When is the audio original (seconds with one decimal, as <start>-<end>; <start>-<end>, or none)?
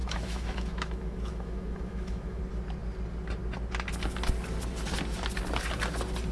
2.4-6.3